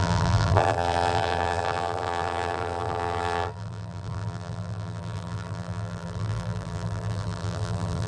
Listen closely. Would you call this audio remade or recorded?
remade